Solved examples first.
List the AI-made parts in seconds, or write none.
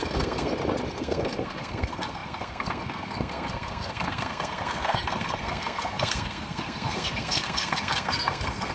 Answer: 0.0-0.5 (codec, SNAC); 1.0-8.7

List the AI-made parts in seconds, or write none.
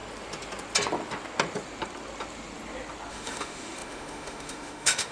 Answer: 3.1-5.1 (autoencoder, DAC-VAE)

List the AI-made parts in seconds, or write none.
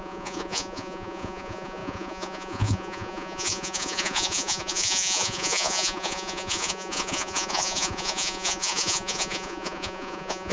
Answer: 0.0-10.5 (vocoder, Vocos)